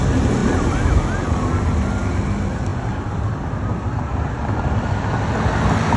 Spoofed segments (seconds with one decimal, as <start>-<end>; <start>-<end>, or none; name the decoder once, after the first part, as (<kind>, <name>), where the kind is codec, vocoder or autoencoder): 0.4-1.5 (vocoder, BigVGAN v2)